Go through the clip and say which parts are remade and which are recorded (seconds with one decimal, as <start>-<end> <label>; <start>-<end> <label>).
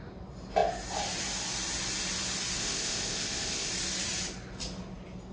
0.0-2.6 recorded; 2.6-3.7 remade; 3.7-5.3 recorded